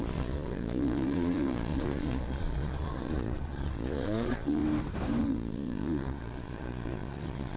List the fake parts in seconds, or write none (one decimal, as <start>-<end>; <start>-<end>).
0.0-4.6; 5.2-7.6

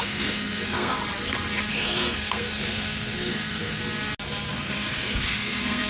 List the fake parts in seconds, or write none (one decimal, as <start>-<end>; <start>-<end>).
0.0-1.0; 1.7-3.8; 4.5-5.9

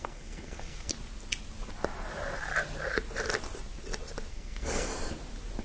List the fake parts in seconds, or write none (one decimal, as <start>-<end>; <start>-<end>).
0.0-0.9; 4.3-4.9

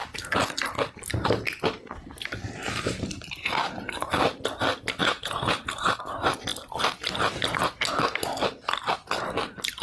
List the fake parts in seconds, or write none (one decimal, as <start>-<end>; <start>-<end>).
5.0-5.8

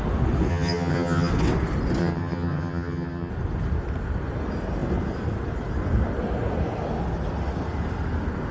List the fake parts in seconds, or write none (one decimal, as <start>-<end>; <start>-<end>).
0.5-1.3; 2.0-3.3